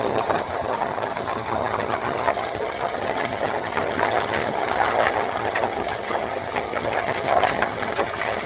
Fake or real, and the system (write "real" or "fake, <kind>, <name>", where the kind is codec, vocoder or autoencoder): fake, vocoder, HiFi-GAN